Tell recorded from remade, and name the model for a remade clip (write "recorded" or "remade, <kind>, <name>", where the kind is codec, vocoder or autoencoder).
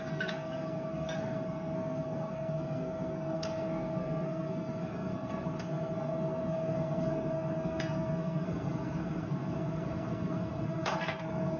remade, codec, SNAC